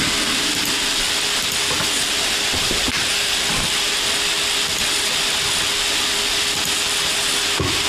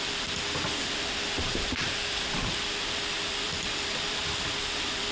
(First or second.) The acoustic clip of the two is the first